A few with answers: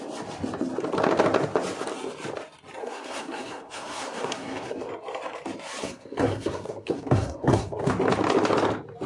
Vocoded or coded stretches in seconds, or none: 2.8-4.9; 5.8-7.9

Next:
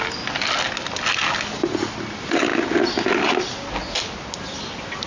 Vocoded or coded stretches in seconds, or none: none

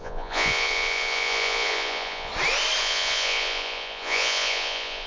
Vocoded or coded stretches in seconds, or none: 0.0-2.3; 2.8-5.1

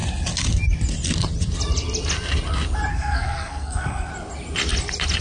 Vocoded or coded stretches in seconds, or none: 2.9-4.1